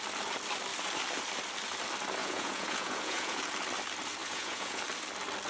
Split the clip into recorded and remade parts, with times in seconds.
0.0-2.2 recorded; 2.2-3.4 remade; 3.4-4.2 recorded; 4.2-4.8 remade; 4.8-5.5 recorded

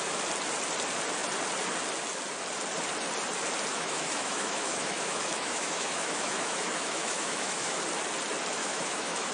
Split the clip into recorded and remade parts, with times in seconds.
0.0-3.7 recorded; 3.7-7.8 remade; 7.8-8.6 recorded; 8.6-9.3 remade

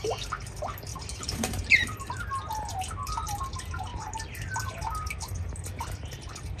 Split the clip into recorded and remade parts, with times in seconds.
0.0-0.9 recorded; 0.9-2.2 remade; 2.2-3.9 recorded; 3.9-4.5 remade; 4.5-6.6 recorded

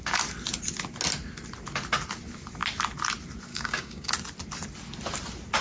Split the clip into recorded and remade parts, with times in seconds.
0.0-3.5 recorded; 3.5-4.1 remade; 4.1-5.6 recorded

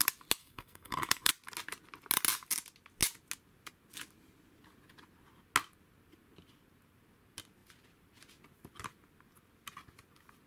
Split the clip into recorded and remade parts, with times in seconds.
0.0-0.4 recorded; 0.4-1.3 remade; 1.3-10.5 recorded